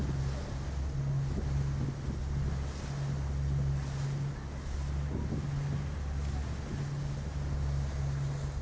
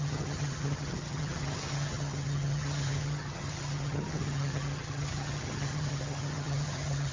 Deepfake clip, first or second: second